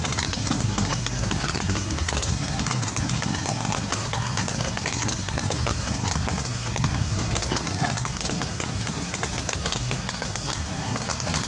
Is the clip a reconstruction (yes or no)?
yes